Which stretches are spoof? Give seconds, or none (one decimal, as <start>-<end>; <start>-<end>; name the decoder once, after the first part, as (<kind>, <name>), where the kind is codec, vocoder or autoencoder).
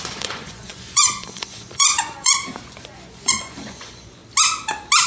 0.0-4.2 (vocoder, Vocos)